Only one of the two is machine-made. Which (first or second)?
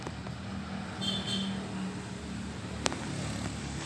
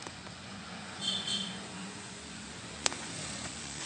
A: second